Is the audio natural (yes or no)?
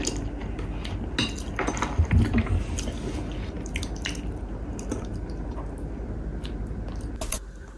yes